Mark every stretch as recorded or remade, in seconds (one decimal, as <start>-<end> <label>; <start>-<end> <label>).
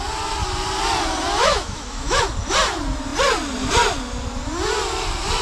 0.0-1.4 recorded; 1.4-2.2 remade; 2.2-5.4 recorded